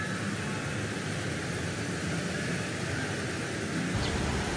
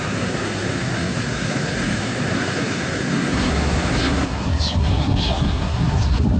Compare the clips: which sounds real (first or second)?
first